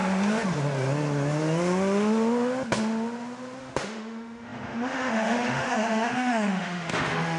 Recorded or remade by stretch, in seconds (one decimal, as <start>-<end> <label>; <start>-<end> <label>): 0.0-3.6 recorded; 3.6-7.4 remade